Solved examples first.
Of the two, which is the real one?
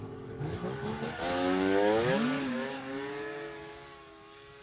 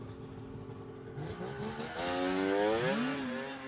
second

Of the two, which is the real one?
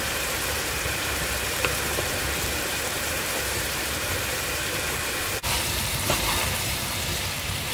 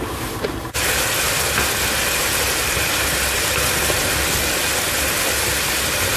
second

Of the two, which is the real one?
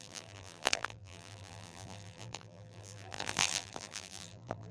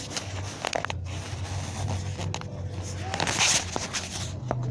second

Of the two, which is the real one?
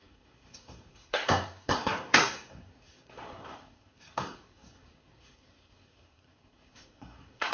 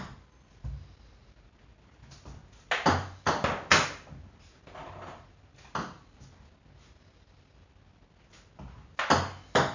second